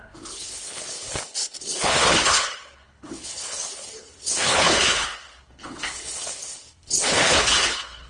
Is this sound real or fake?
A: fake